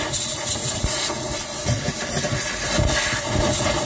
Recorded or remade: recorded